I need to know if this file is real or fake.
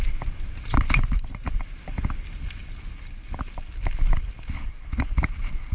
real